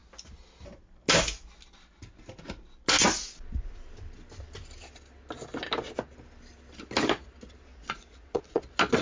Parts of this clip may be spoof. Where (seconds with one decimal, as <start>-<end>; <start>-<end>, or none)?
7.7-8.6